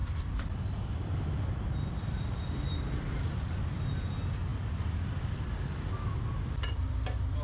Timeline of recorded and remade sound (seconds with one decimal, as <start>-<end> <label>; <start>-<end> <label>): 0.0-3.8 remade; 3.8-4.5 recorded; 4.5-6.9 remade; 6.9-7.4 recorded